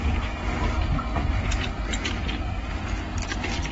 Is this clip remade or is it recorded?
recorded